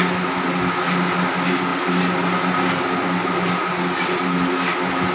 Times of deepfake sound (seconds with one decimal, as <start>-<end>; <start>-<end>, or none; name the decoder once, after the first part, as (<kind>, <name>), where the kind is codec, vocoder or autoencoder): none